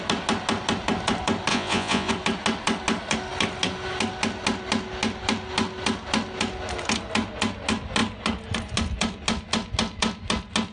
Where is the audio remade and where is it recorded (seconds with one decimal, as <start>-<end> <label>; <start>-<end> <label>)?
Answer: 0.0-1.5 recorded; 1.5-2.1 remade; 2.1-10.7 recorded